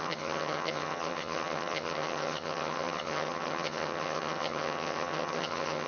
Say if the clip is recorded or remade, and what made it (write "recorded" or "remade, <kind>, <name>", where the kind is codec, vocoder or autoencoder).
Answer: remade, vocoder, HiFi-GAN